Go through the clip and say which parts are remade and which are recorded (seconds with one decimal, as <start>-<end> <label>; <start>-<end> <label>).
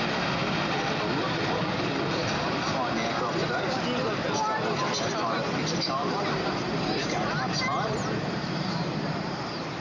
0.0-6.0 recorded; 6.0-9.8 remade